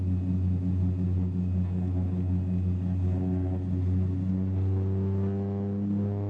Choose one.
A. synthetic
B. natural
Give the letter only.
B